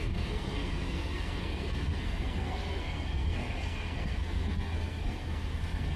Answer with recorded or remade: remade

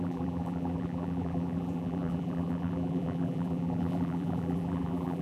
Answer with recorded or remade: remade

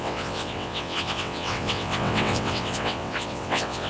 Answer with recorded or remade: remade